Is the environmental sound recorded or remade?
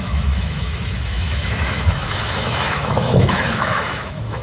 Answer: remade